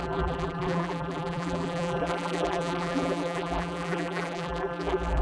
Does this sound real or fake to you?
fake